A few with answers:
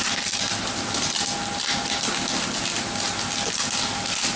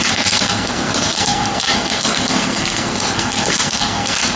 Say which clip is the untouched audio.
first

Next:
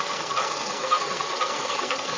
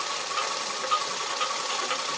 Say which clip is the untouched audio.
second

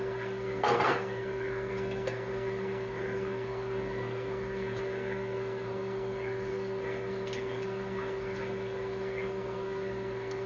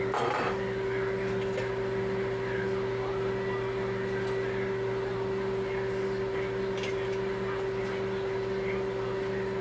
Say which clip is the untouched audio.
second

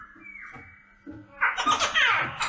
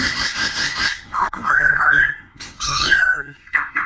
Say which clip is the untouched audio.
first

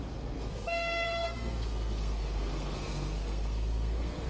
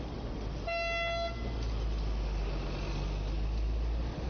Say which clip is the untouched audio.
second